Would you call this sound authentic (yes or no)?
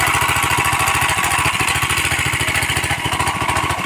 yes